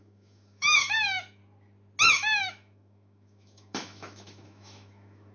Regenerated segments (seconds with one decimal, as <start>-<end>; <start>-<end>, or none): 0.0-1.4; 2.1-5.3